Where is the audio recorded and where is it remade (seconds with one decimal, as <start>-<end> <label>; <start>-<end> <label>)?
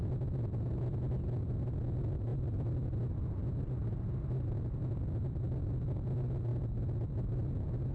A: 0.0-7.9 recorded